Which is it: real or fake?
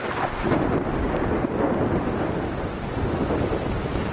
real